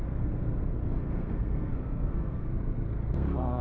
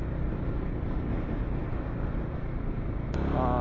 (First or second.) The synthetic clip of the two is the first